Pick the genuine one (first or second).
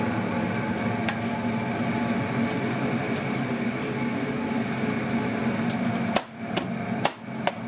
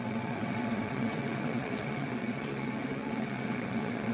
first